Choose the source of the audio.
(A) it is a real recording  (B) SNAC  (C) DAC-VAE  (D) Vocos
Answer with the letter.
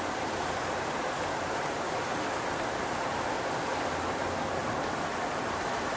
A